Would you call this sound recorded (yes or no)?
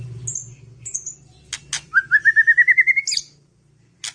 yes